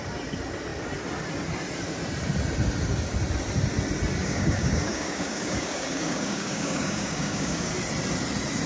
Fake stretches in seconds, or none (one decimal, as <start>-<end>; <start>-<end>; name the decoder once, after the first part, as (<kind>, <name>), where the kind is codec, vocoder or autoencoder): 4.2-7.7 (codec, DAC)